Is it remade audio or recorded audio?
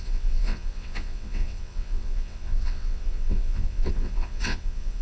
remade